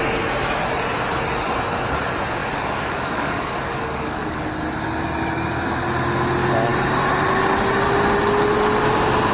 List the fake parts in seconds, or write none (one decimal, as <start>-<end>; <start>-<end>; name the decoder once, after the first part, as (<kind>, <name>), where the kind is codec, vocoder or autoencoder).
2.4-4.5 (codec, DAC)